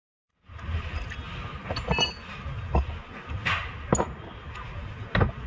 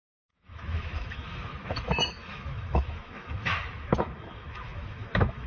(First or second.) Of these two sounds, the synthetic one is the second